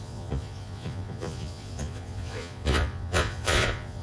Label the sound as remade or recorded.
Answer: remade